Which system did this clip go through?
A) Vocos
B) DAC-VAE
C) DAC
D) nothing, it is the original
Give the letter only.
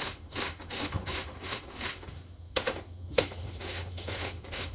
B